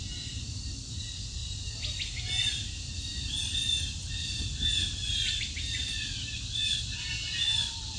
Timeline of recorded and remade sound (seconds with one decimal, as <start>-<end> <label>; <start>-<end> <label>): 0.0-8.0 recorded